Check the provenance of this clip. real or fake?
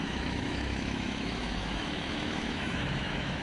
fake